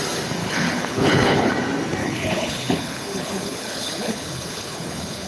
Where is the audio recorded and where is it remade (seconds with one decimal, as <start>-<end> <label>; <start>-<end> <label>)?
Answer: 0.0-0.4 recorded; 0.4-1.5 remade; 1.5-2.0 recorded; 2.0-5.3 remade

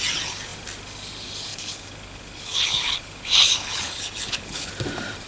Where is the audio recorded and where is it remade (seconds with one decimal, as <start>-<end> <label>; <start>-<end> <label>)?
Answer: 0.0-1.5 recorded; 1.5-4.7 remade; 4.7-5.3 recorded